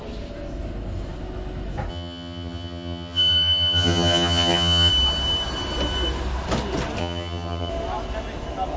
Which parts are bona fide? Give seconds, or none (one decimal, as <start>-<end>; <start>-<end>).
0.0-1.9; 4.9-7.0; 7.7-8.8